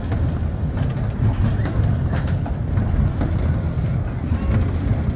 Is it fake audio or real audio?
real